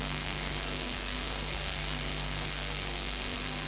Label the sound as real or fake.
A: fake